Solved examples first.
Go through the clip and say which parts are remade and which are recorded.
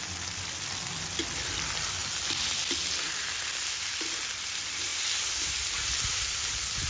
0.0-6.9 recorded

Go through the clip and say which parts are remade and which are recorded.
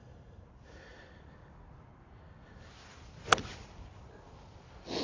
0.0-5.0 recorded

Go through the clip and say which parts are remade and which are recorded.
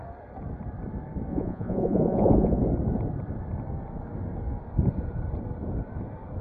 0.0-1.3 recorded; 1.3-2.6 remade; 2.6-6.4 recorded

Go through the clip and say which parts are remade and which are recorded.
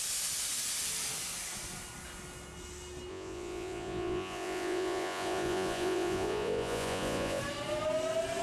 0.0-3.1 recorded; 3.1-7.4 remade; 7.4-8.4 recorded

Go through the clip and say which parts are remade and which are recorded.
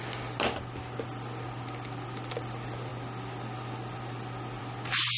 0.0-5.2 recorded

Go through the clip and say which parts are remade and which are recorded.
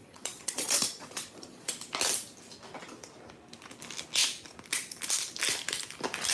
0.0-1.7 remade; 1.7-6.3 recorded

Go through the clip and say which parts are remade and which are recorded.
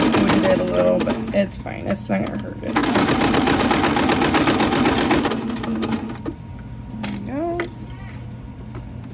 0.0-9.1 recorded